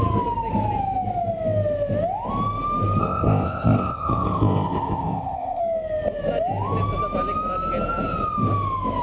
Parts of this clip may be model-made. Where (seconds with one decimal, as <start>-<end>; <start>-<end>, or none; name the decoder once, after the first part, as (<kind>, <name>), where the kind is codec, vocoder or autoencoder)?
3.0-5.6 (codec, ZipCodec)

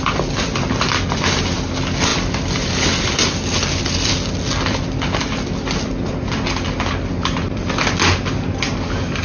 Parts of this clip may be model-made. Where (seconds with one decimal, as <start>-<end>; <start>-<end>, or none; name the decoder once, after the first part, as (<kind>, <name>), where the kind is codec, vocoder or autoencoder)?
none

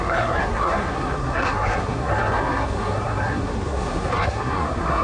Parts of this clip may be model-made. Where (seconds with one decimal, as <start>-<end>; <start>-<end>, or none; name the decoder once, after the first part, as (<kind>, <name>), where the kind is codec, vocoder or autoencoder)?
0.0-5.0 (codec, SNAC)